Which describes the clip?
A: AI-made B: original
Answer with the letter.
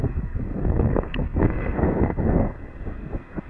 A